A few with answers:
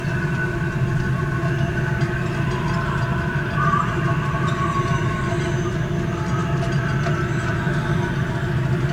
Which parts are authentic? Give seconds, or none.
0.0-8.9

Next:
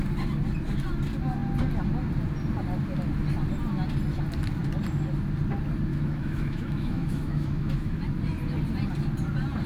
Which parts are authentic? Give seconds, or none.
0.0-5.9; 8.0-9.7